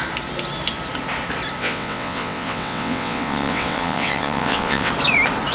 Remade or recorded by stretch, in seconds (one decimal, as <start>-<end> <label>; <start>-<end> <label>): 0.0-1.6 recorded; 1.6-4.9 remade; 4.9-5.5 recorded